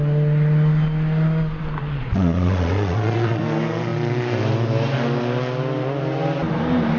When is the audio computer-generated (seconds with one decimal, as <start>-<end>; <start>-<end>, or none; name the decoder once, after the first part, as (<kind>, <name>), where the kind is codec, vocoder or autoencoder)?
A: 1.8-3.4 (vocoder, Vocos)

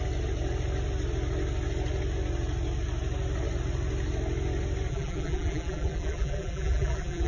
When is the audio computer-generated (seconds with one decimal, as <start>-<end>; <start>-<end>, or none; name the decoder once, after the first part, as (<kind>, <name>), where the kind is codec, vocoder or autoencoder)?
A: 4.9-7.3 (vocoder, BigVGAN v2)

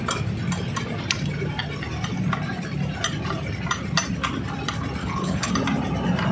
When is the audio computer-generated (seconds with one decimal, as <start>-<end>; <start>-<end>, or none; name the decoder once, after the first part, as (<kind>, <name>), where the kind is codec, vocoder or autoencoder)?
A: 5.0-5.5 (codec, HILCodec)